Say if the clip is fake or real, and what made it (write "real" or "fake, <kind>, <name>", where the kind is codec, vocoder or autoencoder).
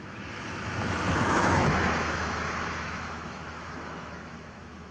fake, autoencoder, DAC-VAE